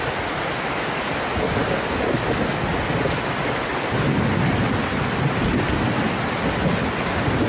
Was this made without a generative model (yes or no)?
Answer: yes